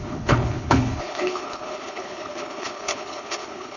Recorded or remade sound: remade